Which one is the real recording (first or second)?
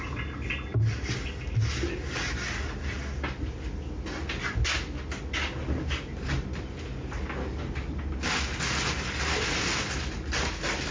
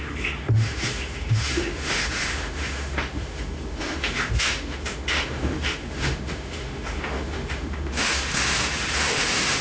first